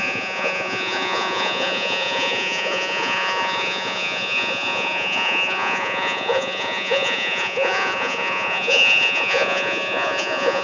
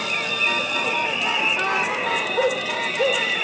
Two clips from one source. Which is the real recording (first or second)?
second